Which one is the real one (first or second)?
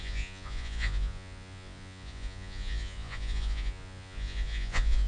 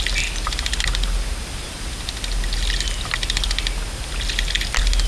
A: second